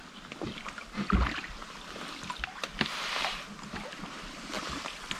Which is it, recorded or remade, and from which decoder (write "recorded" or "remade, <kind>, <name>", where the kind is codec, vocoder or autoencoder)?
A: recorded